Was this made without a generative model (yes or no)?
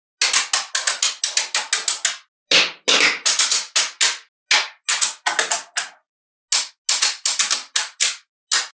yes